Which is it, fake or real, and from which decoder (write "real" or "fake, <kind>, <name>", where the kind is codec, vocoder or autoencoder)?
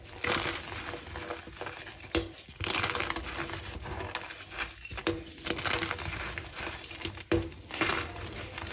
real